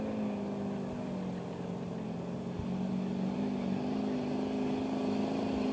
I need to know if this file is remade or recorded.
recorded